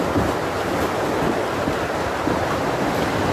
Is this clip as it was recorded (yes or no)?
yes